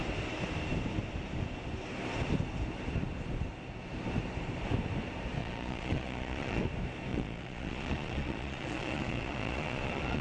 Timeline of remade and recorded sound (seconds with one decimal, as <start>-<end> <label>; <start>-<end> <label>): 0.0-5.4 recorded; 5.4-6.6 remade; 6.6-7.1 recorded; 7.1-10.2 remade